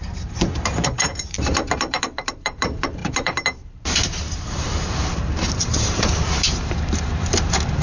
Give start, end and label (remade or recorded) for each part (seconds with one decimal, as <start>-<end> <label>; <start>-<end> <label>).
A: 0.0-7.8 remade